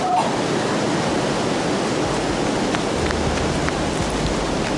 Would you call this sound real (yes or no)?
yes